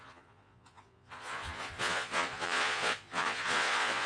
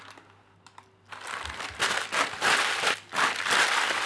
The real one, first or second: second